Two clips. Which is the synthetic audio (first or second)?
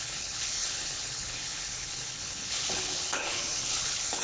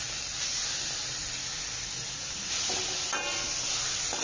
first